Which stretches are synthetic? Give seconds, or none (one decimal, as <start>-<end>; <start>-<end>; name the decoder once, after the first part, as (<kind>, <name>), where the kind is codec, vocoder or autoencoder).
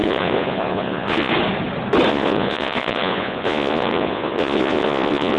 0.0-1.3 (vocoder, Vocos); 2.1-5.4